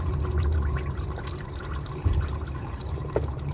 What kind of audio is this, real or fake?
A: fake